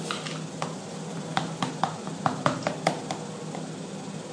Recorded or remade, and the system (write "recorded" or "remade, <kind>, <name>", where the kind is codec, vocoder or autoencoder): recorded